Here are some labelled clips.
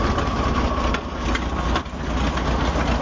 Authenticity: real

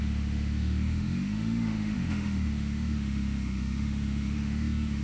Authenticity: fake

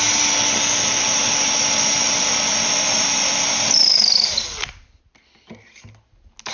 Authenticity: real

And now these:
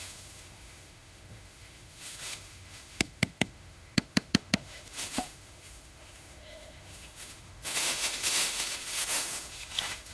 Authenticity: fake